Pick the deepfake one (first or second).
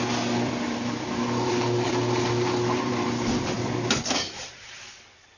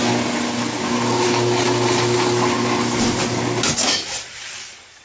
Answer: first